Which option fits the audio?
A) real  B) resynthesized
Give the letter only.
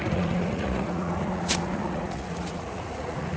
B